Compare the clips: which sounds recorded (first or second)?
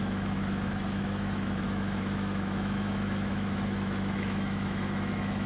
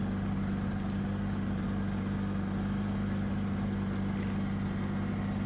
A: second